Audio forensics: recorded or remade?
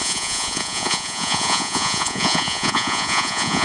remade